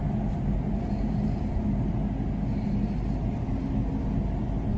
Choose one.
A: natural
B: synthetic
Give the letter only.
A